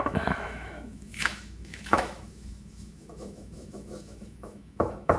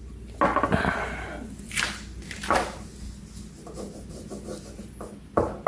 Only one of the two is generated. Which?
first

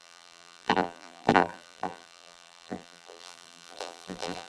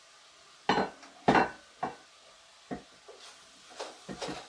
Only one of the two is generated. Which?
first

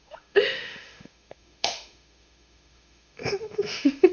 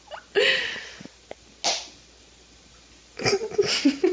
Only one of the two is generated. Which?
first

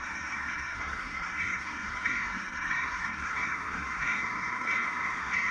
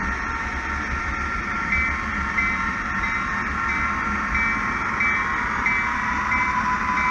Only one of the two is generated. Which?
first